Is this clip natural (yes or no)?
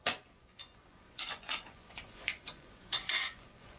no